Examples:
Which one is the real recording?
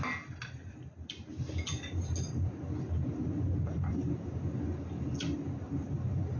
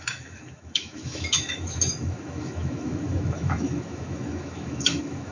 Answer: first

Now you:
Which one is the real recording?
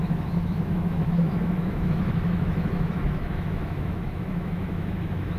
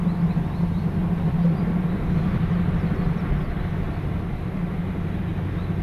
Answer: second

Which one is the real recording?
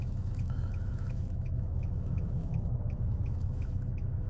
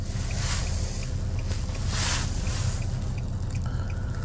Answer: second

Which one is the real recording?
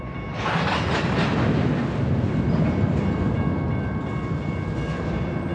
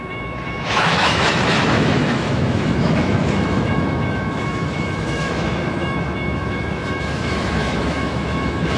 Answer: first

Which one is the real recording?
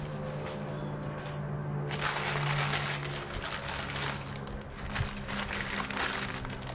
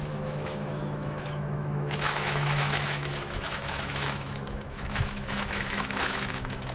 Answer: first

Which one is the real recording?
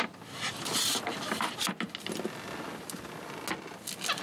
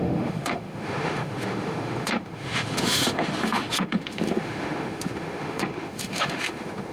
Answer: first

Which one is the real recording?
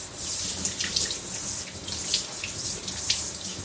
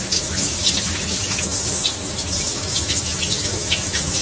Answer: first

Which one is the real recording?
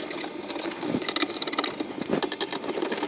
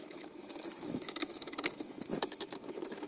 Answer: first